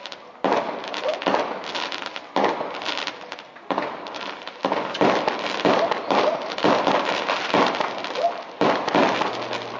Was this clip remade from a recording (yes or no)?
no